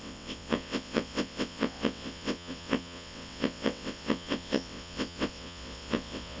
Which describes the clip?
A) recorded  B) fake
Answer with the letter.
B